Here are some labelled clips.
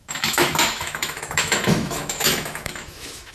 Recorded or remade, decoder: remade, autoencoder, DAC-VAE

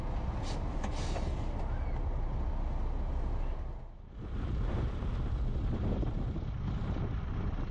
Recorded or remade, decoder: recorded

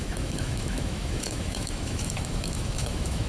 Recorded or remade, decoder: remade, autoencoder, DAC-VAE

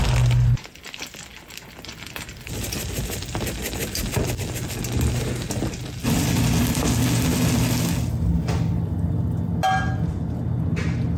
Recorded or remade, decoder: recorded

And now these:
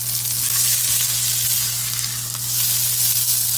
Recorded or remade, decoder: recorded